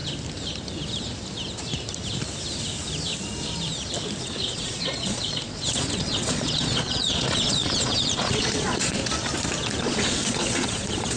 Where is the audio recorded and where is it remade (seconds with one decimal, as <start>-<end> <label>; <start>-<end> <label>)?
0.0-4.2 recorded; 4.2-9.0 remade; 9.0-9.8 recorded; 9.8-11.2 remade